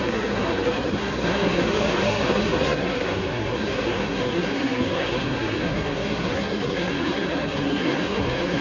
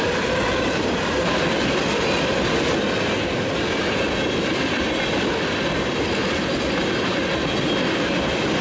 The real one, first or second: second